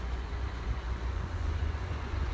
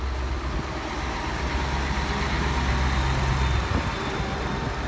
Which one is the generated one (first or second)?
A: first